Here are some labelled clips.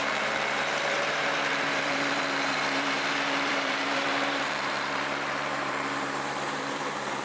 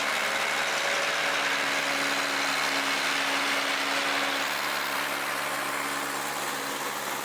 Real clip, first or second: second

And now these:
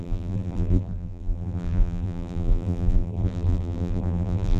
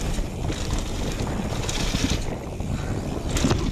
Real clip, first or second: second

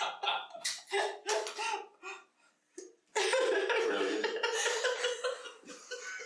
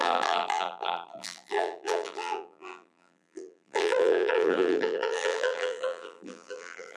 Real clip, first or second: first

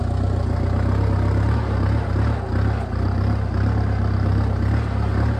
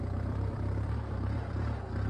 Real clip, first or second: first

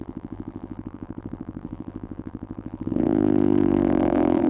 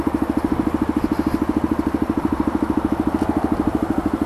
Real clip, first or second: second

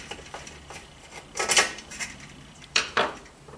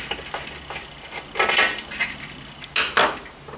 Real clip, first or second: second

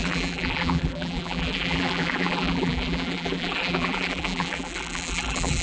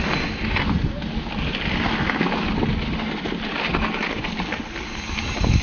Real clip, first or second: second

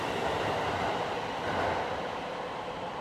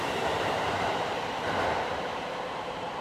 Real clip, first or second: first